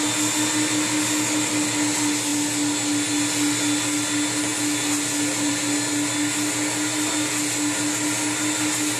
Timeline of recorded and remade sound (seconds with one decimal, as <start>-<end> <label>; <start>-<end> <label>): 0.0-9.0 recorded